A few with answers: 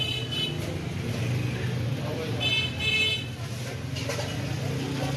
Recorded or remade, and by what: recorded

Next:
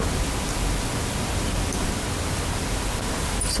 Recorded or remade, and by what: recorded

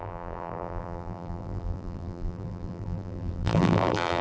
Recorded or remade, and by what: remade, vocoder, BigVGAN v2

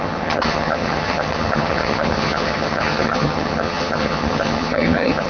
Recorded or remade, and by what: remade, vocoder, HiFi-GAN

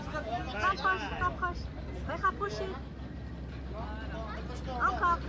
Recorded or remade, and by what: recorded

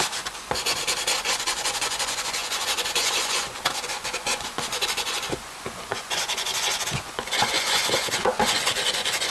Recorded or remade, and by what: remade, vocoder, Vocos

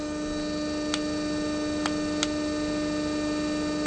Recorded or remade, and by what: recorded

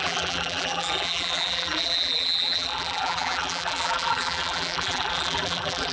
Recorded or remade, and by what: remade, vocoder, BigVGAN v2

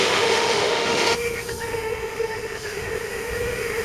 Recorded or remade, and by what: remade, autoencoder, DAC-VAE